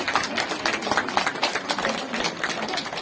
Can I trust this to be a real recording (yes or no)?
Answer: yes